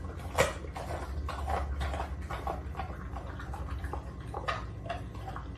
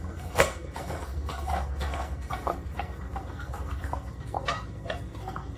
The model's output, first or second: second